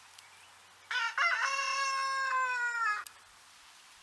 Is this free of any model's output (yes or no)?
yes